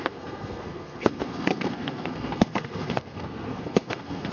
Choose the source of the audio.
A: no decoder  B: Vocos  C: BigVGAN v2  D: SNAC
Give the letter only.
D